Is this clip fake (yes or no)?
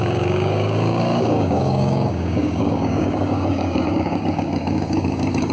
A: yes